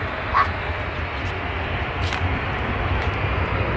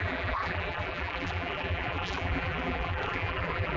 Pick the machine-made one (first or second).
second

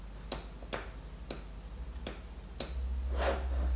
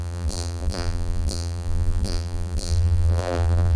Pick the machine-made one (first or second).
second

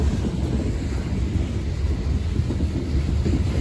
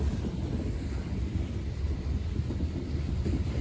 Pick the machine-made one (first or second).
second